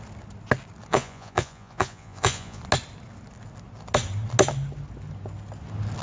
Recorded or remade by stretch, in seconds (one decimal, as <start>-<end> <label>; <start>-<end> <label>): 0.0-0.9 recorded; 0.9-2.6 remade; 2.6-6.0 recorded